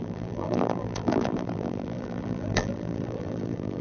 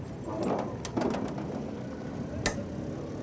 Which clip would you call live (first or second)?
second